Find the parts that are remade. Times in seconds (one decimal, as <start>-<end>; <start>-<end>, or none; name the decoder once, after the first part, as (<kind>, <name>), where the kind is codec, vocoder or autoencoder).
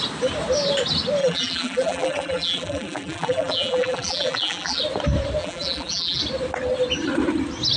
1.2-4.8 (vocoder, BigVGAN v2); 5.4-6.2